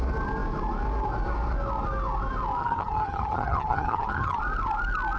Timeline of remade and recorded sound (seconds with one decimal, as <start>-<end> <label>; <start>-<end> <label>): 0.0-2.6 recorded; 2.6-4.4 remade; 4.4-5.2 recorded